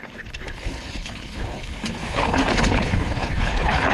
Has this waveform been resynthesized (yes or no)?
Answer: yes